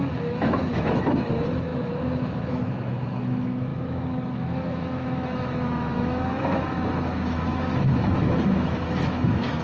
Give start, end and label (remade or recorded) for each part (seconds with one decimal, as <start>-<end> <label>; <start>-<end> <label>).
0.0-9.6 remade